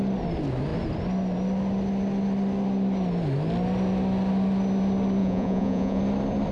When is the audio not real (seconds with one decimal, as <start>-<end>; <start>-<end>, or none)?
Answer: 5.2-6.0